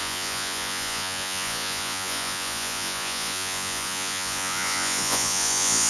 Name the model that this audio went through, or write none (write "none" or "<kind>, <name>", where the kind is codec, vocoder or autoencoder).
vocoder, Vocos